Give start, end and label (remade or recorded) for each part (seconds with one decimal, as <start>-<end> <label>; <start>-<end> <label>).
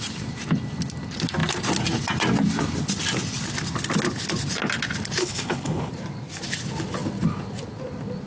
0.0-5.2 recorded; 5.2-5.9 remade; 5.9-8.3 recorded